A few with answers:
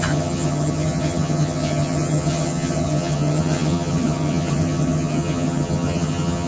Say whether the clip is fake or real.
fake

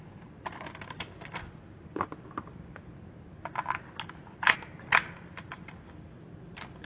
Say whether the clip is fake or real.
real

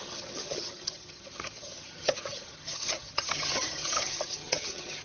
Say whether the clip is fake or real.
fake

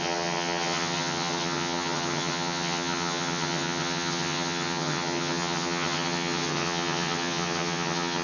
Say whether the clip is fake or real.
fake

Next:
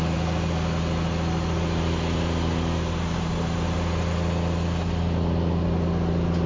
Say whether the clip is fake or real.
real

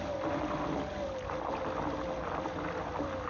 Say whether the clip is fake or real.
real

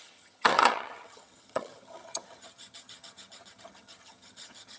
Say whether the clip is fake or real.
fake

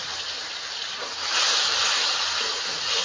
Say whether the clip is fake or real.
real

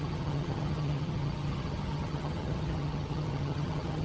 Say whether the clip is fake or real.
fake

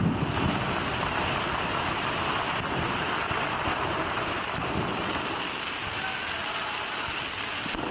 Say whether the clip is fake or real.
real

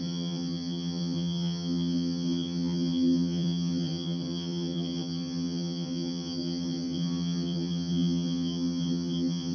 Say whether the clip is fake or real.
fake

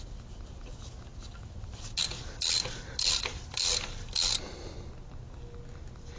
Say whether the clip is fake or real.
real